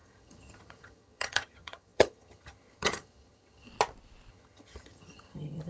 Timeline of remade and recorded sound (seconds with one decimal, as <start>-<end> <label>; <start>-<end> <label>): 0.0-3.7 remade; 3.7-4.3 recorded; 4.3-5.7 remade